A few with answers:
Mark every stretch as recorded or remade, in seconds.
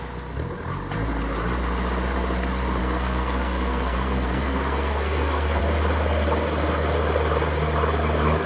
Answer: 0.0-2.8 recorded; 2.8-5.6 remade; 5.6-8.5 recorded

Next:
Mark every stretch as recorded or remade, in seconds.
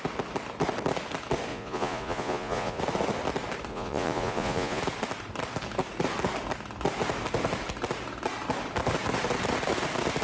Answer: 0.0-1.5 recorded; 1.5-2.8 remade; 2.8-3.7 recorded; 3.7-4.8 remade; 4.8-10.2 recorded